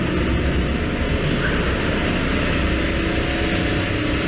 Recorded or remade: recorded